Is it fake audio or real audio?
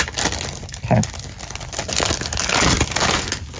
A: real